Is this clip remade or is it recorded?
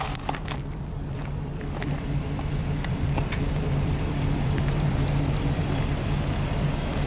remade